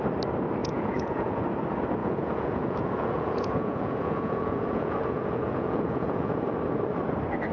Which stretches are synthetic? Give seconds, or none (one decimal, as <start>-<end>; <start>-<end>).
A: 0.6-1.4; 2.0-6.5